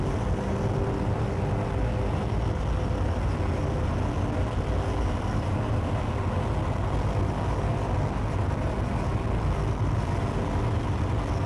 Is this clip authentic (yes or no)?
yes